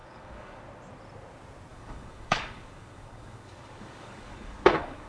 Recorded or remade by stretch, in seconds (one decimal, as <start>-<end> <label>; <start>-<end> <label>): 0.0-0.6 remade; 0.6-1.7 recorded; 1.7-5.1 remade